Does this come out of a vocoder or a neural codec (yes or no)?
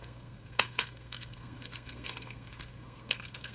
yes